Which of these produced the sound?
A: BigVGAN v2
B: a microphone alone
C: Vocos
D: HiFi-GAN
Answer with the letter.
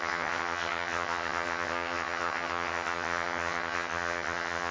D